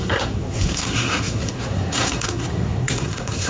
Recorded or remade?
remade